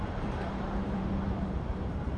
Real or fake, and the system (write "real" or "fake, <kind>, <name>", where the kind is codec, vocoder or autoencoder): fake, vocoder, BigVGAN v2